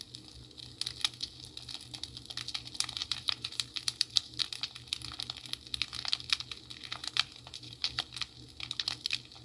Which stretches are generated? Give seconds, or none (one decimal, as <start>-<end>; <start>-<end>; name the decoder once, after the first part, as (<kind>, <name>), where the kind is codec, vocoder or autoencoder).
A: 3.0-4.7 (vocoder, BigVGAN v2); 7.0-8.0